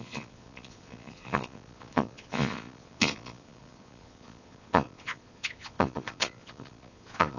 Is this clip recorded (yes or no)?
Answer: no